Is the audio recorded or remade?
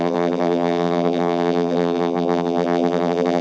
remade